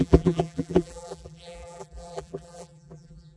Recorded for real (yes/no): no